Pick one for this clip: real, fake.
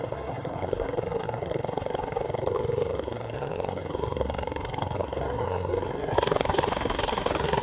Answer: fake